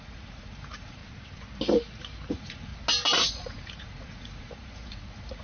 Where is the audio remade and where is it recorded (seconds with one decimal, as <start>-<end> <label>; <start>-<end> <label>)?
0.0-1.0 remade; 1.0-2.3 recorded; 2.3-2.7 remade; 2.7-3.3 recorded; 3.3-5.4 remade